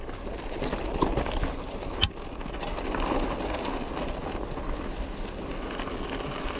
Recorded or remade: recorded